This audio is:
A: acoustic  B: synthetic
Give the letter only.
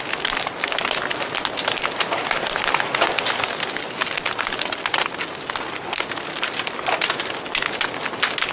A